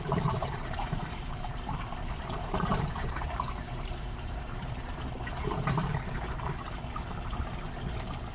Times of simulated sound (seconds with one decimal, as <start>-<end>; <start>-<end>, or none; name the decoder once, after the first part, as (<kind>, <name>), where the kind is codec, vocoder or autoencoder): 0.0-5.9 (vocoder, BigVGAN v2)